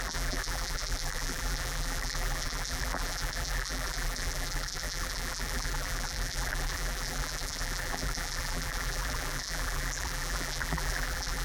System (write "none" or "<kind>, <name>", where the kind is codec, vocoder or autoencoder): vocoder, BigVGAN v2